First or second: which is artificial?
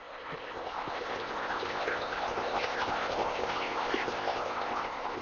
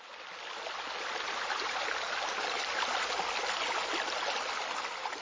first